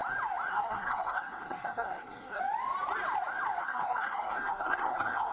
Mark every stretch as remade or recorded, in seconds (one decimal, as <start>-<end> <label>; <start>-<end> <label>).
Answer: 0.0-0.5 recorded; 0.5-2.4 remade; 2.4-3.6 recorded; 3.6-5.3 remade